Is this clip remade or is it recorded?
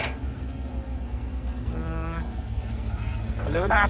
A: remade